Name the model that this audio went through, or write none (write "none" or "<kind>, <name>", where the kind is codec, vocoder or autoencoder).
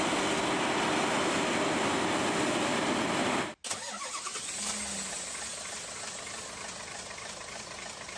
none